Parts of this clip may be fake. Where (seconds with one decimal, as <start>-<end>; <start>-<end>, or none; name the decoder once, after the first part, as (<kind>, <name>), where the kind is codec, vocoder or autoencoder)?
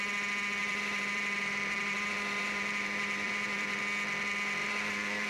0.6-3.8 (vocoder, BigVGAN v2); 4.6-5.3